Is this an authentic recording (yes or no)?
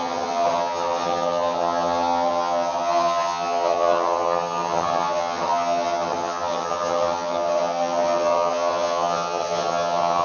no